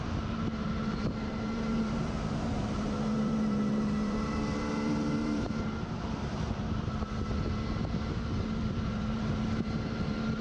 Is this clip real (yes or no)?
no